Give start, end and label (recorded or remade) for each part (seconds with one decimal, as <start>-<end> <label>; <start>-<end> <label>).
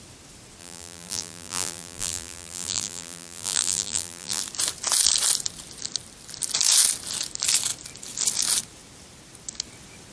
0.0-0.6 recorded; 0.6-4.4 remade; 4.4-10.1 recorded